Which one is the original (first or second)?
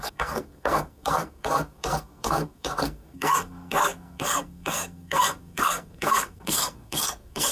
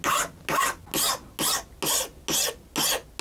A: second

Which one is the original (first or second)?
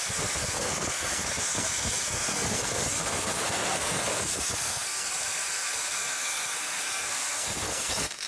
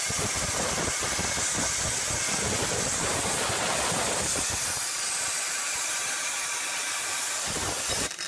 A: second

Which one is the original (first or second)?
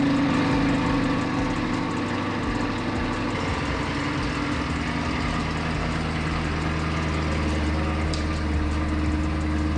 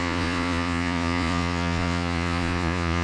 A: first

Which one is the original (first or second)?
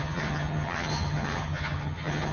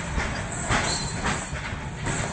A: second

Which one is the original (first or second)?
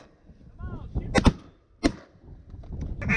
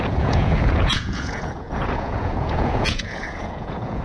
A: first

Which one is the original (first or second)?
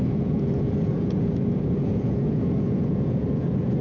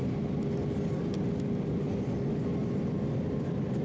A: second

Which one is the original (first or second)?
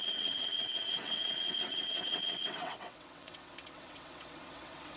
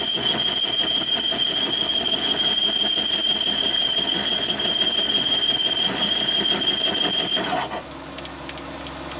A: second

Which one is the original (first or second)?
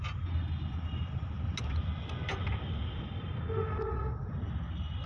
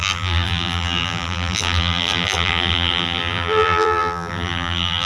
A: first